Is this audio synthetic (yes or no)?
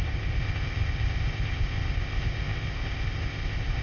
yes